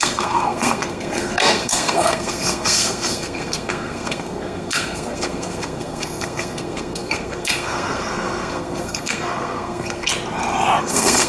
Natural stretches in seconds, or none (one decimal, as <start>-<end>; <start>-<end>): 10.1-10.8